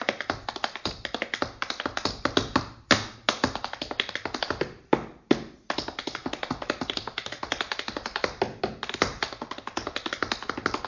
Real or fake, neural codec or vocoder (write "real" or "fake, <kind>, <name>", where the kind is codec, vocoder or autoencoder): real